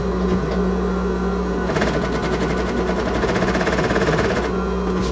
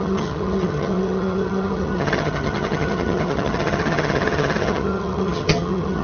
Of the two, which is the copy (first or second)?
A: second